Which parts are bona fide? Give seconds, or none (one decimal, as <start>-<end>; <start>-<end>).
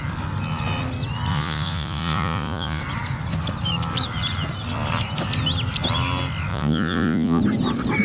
0.0-1.3; 2.8-6.5; 7.4-8.0